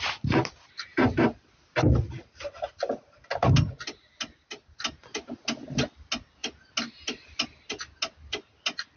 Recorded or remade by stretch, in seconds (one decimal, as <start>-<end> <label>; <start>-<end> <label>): 0.0-9.0 recorded